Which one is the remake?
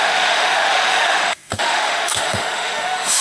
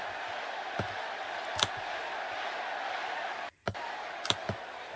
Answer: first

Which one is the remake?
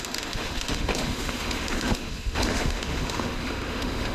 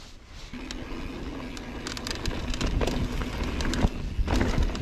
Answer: first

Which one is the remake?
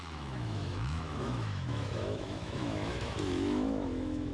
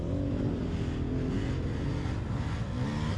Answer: first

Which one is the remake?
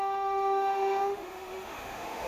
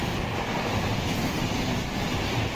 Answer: first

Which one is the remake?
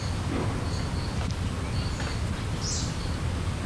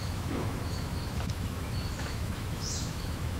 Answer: second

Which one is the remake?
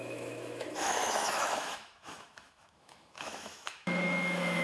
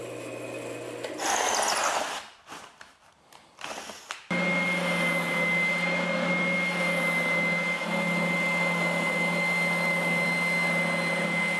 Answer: first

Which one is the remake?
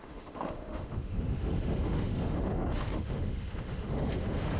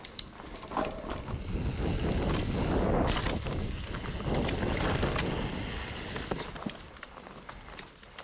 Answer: first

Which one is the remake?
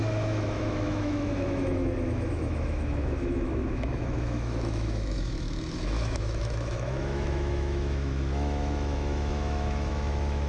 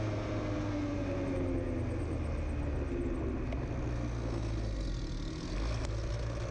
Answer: first